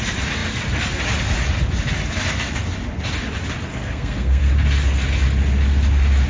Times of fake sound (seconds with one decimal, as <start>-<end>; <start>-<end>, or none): 3.7-4.5